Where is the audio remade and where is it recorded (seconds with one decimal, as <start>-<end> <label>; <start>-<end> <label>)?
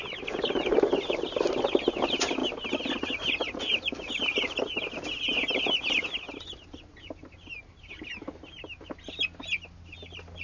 0.0-10.4 recorded